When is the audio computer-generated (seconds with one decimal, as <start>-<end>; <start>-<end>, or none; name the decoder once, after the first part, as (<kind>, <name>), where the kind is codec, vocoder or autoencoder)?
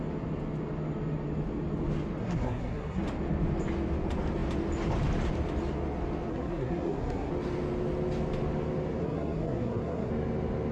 2.2-3.0 (codec, SNAC); 6.3-7.3; 9.0-10.1